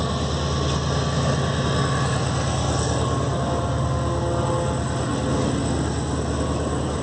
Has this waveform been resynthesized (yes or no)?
no